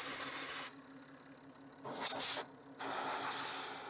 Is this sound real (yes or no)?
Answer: yes